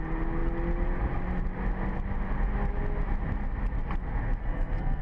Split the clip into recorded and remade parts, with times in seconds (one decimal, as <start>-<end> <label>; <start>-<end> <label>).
0.0-4.4 recorded; 4.4-5.0 remade